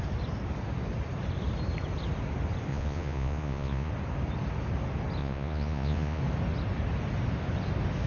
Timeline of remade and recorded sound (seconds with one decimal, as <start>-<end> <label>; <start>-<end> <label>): 0.0-2.7 recorded; 2.7-3.9 remade; 3.9-5.2 recorded; 5.2-6.2 remade; 6.2-8.1 recorded